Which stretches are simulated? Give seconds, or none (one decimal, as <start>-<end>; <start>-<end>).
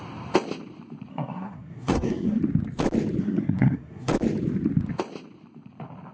1.1-2.4; 3.2-4.1